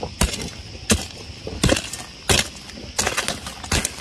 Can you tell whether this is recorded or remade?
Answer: recorded